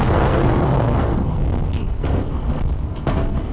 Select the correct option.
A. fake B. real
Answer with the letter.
A